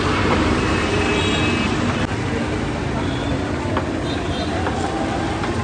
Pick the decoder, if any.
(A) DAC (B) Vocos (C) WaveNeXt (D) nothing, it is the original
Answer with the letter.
D